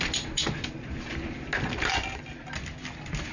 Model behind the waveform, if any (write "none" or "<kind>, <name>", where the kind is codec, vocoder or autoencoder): none